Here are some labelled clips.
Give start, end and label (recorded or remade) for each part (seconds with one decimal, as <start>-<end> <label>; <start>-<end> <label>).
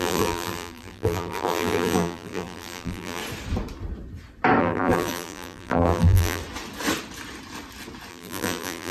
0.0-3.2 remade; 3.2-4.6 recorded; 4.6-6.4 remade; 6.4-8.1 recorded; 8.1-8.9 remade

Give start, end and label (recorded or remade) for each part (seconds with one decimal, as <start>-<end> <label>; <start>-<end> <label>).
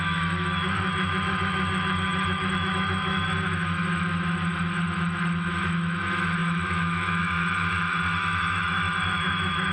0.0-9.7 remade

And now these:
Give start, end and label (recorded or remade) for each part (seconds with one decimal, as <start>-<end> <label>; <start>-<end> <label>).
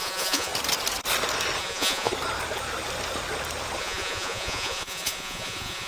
0.0-0.5 remade; 0.5-1.6 recorded; 1.6-2.1 remade; 2.1-3.8 recorded; 3.8-5.9 remade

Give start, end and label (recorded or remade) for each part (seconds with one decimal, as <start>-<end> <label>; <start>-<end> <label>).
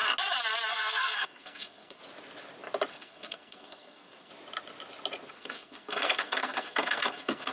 0.0-0.7 recorded; 0.7-2.0 remade; 2.0-2.9 recorded; 2.9-4.3 remade; 4.3-5.3 recorded; 5.3-7.5 remade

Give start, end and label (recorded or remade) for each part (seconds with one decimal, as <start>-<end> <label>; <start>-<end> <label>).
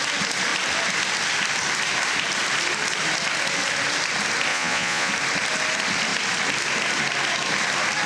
0.0-4.5 recorded; 4.5-5.1 remade; 5.1-8.1 recorded